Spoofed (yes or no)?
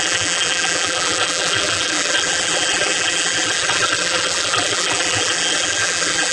yes